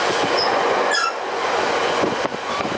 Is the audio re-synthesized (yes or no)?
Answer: yes